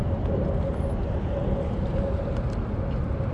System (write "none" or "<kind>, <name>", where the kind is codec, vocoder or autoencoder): none